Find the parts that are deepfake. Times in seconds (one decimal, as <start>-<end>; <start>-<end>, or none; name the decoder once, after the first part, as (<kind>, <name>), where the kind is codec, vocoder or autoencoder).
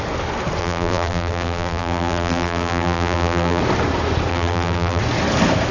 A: 0.6-3.6 (vocoder, BigVGAN v2); 4.3-5.0